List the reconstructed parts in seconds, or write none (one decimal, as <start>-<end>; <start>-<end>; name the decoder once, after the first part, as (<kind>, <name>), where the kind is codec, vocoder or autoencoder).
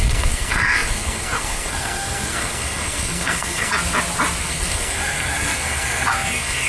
0.0-3.7 (codec, SNAC); 4.4-6.7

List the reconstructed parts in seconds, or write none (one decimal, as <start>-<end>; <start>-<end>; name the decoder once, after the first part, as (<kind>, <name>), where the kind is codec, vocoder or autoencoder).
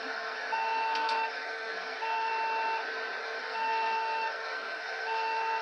0.0-2.3 (codec, SNAC); 3.2-5.6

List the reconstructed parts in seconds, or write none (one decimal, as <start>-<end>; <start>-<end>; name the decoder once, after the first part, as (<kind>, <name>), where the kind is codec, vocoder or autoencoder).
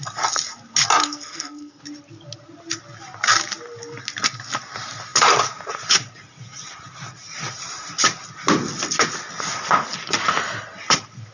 1.0-1.8 (codec, SNAC)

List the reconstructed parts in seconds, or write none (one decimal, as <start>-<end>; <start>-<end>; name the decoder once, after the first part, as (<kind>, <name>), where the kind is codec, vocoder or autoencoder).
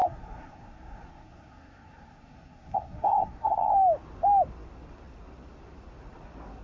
0.0-3.7 (codec, SNAC)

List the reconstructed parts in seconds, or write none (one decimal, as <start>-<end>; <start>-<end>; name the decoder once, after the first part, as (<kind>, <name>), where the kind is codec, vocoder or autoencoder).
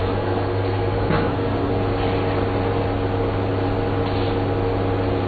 0.0-1.7 (codec, SNAC)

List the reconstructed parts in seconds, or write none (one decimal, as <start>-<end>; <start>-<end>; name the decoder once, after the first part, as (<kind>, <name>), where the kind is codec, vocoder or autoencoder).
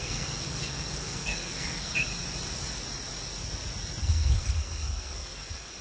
0.0-2.1 (codec, SNAC); 4.0-5.8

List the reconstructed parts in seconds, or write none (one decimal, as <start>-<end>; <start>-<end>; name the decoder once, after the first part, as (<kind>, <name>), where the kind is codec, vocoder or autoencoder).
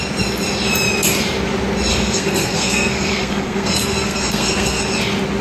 1.9-4.8 (codec, SNAC)